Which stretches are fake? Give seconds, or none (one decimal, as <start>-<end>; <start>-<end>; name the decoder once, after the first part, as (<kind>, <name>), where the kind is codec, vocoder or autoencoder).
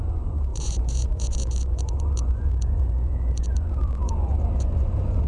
0.0-5.3 (vocoder, Vocos)